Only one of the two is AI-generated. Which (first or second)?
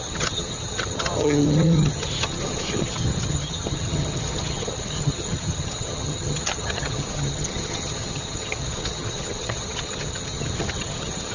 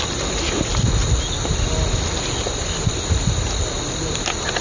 first